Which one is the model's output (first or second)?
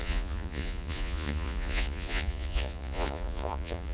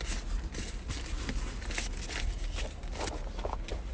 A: first